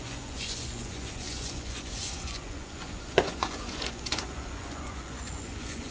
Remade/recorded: remade